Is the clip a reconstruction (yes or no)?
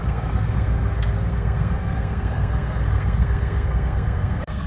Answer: yes